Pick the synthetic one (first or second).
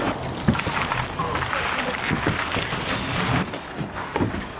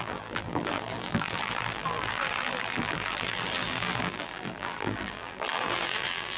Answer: second